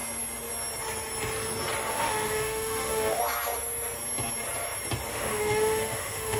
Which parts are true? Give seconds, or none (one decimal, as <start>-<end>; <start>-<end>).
0.0-1.9; 3.2-5.1